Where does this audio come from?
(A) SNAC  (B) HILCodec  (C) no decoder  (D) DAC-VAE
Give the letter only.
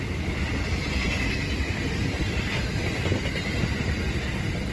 C